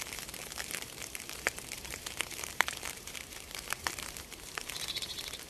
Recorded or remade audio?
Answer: remade